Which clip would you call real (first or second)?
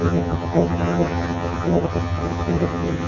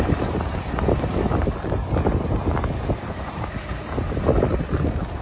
second